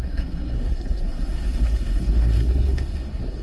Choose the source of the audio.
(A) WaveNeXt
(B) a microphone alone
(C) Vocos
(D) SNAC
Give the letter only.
D